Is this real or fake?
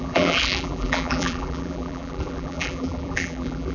fake